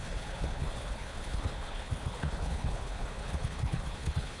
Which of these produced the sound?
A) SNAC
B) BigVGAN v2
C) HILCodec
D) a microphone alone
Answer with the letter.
C